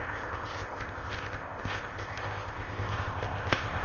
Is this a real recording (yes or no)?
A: no